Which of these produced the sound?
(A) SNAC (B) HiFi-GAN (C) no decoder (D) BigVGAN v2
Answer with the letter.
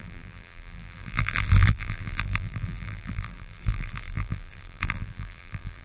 D